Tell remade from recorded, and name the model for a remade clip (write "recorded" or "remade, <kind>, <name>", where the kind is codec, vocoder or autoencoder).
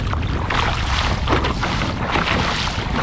recorded